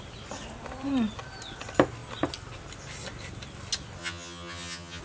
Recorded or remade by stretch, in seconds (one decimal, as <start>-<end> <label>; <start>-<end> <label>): 0.0-4.0 recorded; 4.0-5.0 remade